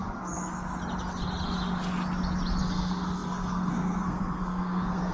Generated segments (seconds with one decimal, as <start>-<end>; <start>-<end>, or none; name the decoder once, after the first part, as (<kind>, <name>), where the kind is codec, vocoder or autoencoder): 0.0-0.8 (codec, SNAC); 2.6-5.1